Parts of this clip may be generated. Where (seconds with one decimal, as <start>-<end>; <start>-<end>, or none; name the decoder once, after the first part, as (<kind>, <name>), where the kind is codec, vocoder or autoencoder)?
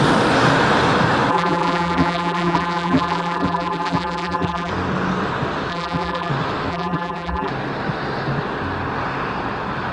1.3-4.7 (vocoder, BigVGAN v2); 5.7-6.3; 6.7-7.5